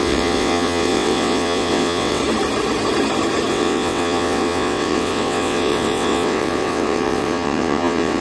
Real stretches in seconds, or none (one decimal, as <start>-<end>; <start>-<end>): 2.2-3.5